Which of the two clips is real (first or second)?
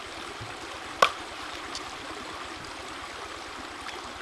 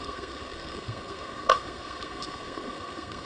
first